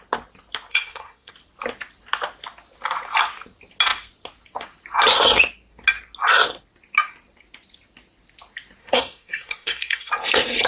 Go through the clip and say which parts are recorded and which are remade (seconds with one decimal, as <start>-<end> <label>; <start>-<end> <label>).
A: 0.0-0.7 recorded; 0.7-1.3 remade; 1.3-8.8 recorded; 8.8-10.1 remade; 10.1-10.7 recorded